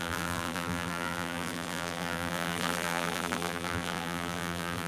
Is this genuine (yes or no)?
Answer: no